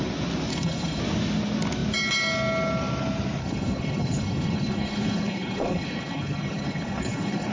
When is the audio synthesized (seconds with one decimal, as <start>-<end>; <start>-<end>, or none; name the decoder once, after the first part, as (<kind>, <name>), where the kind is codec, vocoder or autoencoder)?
0.5-1.0 (codec, HILCodec); 3.4-7.5